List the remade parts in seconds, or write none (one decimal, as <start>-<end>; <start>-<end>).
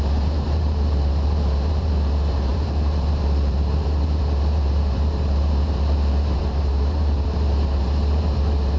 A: 0.0-8.8